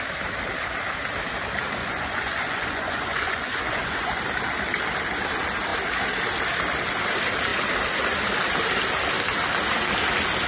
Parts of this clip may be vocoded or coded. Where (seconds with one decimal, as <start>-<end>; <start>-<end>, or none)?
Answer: 1.8-4.2